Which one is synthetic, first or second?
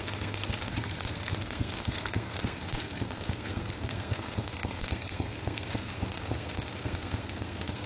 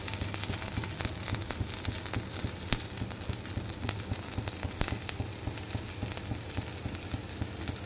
first